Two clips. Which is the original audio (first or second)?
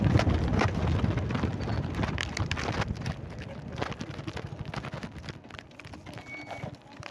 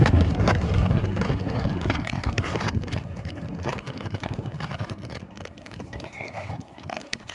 first